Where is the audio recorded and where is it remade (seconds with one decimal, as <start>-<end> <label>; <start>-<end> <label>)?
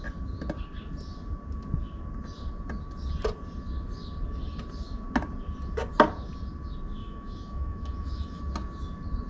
0.0-7.0 recorded; 7.0-8.4 remade; 8.4-9.3 recorded